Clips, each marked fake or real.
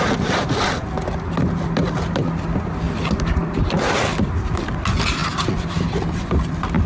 real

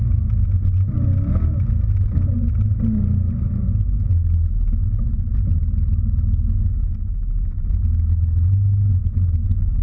real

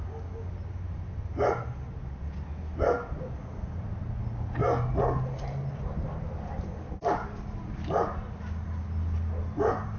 real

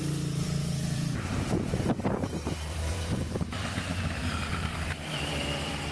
fake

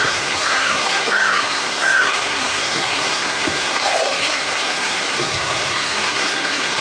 fake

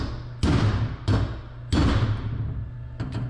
real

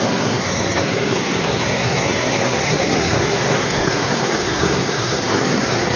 fake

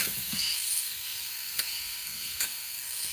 fake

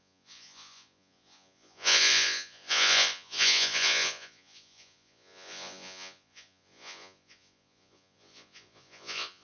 fake